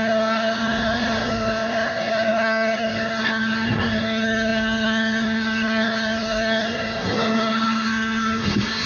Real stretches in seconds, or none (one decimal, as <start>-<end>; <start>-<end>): none